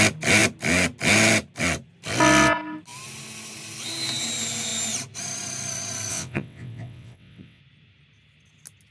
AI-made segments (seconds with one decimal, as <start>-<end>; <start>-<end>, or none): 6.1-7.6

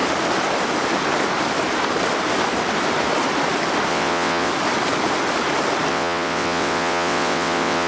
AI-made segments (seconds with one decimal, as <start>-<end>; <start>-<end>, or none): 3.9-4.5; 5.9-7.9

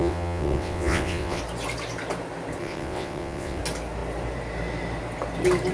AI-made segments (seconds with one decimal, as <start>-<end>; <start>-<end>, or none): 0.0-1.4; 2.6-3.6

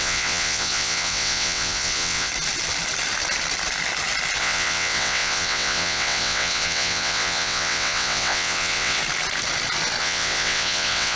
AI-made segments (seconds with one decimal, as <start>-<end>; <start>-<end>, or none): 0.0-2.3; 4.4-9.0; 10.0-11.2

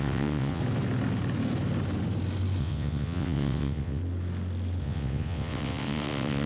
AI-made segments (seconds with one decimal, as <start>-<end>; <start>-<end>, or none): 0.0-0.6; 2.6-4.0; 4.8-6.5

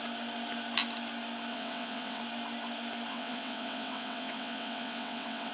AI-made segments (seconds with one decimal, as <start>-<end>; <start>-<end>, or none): 1.5-2.2; 3.1-5.5

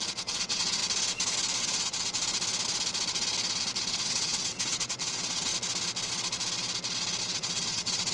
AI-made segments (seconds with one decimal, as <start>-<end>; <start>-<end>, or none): 0.0-0.8; 1.6-2.2; 3.8-5.5; 7.2-8.1

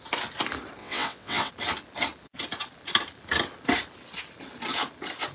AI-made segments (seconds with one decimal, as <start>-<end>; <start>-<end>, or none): 0.8-1.5